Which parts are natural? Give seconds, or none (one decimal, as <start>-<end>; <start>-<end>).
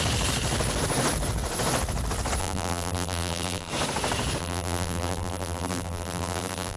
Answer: 0.0-2.4; 3.7-4.4